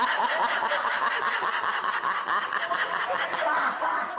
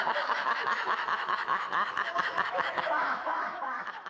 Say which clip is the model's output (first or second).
second